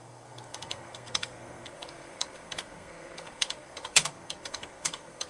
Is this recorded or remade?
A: remade